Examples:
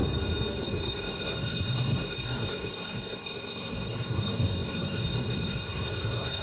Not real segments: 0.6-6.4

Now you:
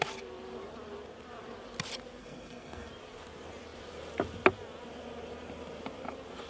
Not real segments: 2.2-2.9